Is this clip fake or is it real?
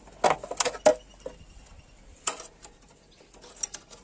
real